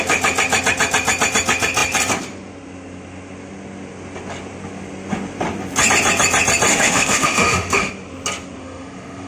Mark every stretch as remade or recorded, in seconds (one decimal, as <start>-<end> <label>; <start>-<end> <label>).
0.0-6.7 recorded; 6.7-7.9 remade; 7.9-8.6 recorded; 8.6-9.3 remade